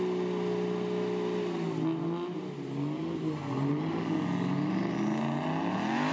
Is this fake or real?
real